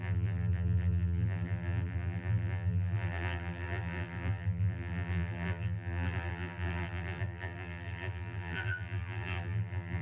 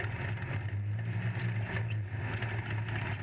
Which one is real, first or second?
second